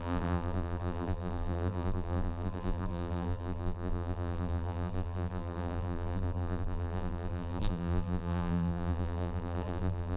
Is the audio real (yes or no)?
no